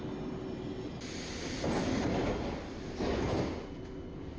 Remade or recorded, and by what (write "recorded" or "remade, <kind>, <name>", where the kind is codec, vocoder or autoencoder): recorded